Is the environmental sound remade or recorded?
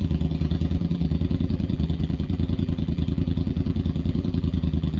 remade